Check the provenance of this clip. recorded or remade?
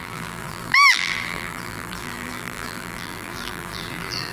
remade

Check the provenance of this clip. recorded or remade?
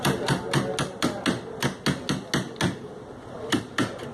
recorded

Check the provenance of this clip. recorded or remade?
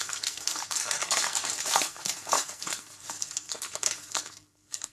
remade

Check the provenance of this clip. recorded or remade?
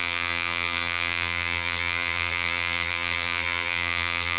remade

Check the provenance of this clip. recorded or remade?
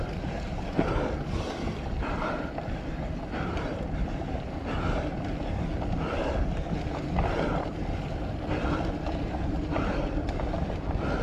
remade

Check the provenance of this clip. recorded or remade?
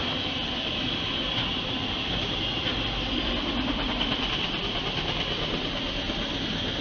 remade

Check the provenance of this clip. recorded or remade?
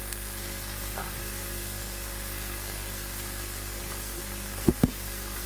remade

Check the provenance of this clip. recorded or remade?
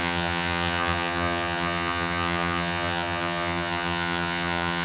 remade